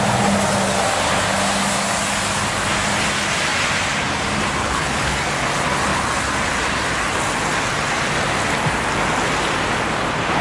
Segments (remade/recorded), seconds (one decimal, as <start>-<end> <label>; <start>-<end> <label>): 0.0-4.6 recorded; 4.6-5.2 remade; 5.2-10.4 recorded